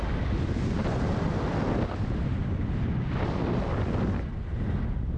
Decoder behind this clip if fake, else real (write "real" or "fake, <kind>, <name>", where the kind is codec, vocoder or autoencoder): real